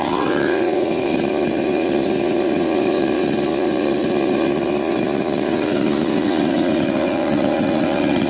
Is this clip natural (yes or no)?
no